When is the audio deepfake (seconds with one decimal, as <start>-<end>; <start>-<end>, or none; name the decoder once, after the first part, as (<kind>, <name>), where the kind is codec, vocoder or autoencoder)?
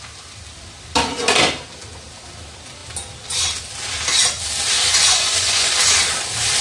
4.9-5.7 (vocoder, Vocos)